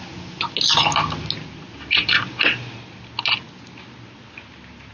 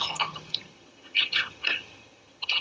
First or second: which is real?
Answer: first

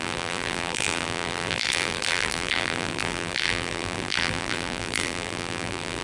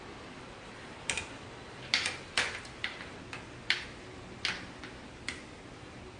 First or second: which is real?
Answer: second